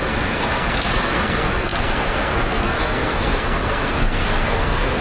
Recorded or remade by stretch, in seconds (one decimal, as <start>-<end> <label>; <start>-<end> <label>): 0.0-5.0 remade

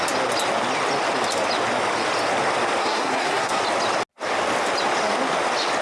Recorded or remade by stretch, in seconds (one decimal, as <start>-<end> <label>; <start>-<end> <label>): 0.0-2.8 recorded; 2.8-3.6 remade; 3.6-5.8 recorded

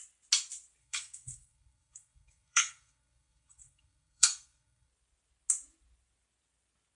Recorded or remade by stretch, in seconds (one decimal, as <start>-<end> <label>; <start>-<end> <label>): 0.0-0.8 recorded; 0.8-4.9 remade; 4.9-6.9 recorded

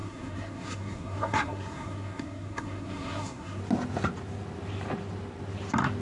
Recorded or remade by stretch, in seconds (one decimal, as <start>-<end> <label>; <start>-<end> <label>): 0.0-3.6 remade; 3.6-6.0 recorded

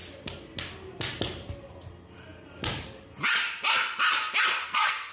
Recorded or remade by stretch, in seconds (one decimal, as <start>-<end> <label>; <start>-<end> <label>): 0.0-4.6 recorded; 4.6-5.1 remade

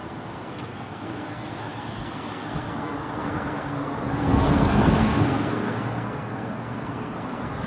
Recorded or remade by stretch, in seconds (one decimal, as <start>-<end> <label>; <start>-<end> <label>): 0.0-7.7 remade